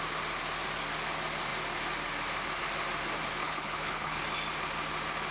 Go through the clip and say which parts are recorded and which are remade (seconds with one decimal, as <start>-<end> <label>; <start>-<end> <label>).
0.0-3.4 recorded; 3.4-4.2 remade; 4.2-5.3 recorded